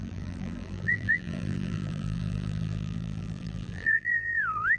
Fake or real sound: fake